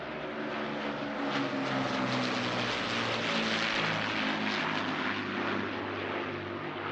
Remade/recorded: recorded